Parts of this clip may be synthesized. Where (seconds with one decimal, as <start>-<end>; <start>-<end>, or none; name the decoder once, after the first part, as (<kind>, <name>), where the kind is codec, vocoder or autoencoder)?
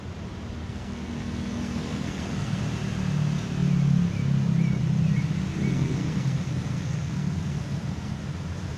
0.6-2.6 (codec, SNAC); 5.7-8.2